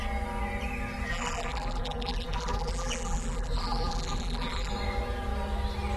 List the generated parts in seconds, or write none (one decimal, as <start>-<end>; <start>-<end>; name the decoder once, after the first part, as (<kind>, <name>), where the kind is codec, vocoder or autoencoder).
1.1-4.7 (vocoder, BigVGAN v2)